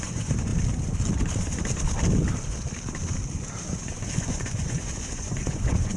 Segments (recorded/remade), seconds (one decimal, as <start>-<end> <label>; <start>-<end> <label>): 0.0-0.5 remade; 0.5-3.8 recorded; 3.8-6.0 remade